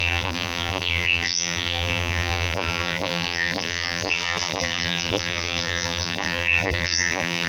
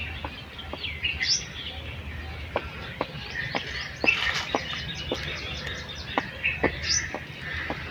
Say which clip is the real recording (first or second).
second